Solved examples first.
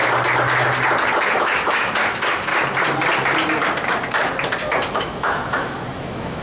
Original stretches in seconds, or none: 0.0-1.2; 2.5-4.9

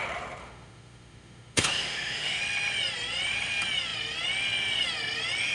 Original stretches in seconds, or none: 0.0-0.4; 2.4-5.5

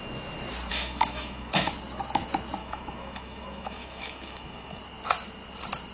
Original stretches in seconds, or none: 0.0-0.7; 1.7-2.6; 4.8-5.9

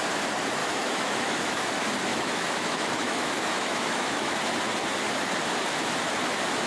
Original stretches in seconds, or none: 0.0-0.6; 1.6-2.1; 4.4-6.7

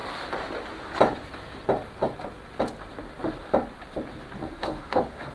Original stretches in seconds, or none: 0.0-4.4

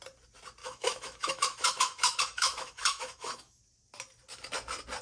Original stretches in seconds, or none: 0.0-0.6; 3.6-5.0

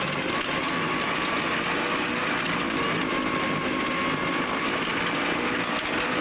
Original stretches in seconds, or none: 0.0-6.2

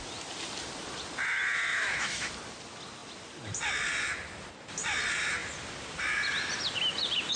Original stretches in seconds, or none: 0.0-1.7; 2.3-7.4